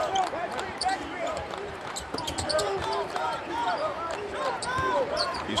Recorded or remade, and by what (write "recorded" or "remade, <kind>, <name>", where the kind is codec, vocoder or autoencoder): remade, vocoder, BigVGAN v2